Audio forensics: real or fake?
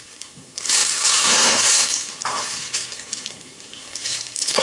fake